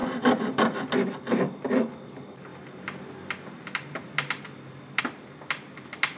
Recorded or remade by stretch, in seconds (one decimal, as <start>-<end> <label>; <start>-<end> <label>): 0.0-6.2 recorded